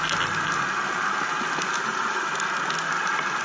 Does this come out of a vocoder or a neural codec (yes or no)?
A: no